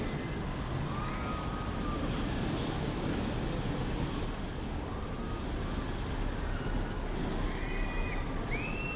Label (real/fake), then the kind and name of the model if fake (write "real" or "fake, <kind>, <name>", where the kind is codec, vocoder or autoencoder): real